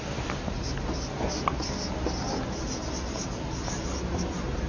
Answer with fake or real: real